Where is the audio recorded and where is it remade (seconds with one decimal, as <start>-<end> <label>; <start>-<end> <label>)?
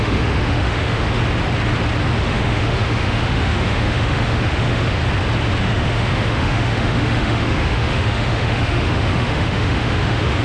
0.0-1.2 remade; 1.2-2.2 recorded; 2.2-5.0 remade; 5.0-5.6 recorded; 5.6-10.4 remade